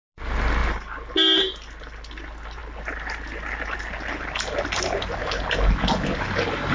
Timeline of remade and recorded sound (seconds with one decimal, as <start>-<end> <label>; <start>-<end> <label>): 0.0-6.7 recorded